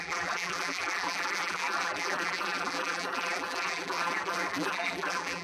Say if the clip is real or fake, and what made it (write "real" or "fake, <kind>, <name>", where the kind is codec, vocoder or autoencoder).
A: fake, vocoder, BigVGAN v2